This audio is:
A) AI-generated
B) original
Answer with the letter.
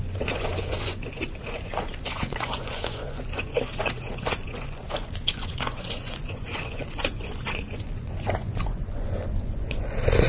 A